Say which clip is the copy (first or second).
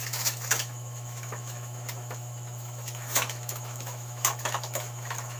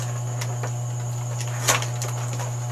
first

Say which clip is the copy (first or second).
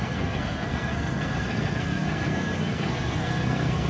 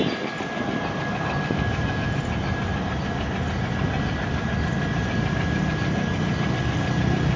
first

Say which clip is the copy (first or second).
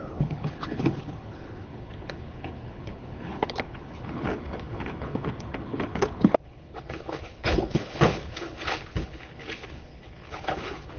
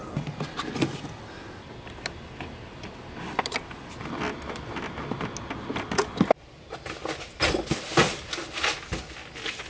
first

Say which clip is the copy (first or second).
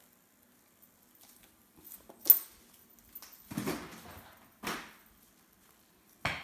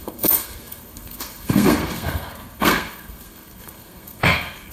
second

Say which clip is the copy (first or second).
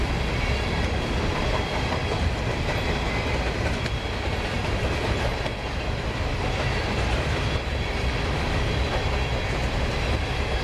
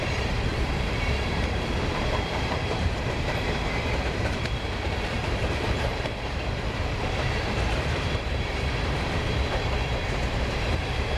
second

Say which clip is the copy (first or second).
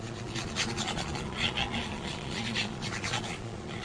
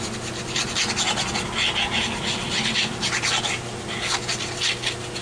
first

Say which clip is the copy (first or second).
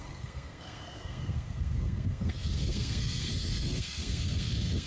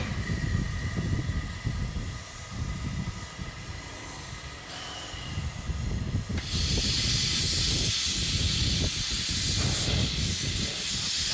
first